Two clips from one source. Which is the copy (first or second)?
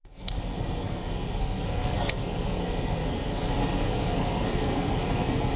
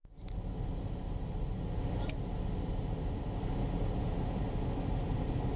first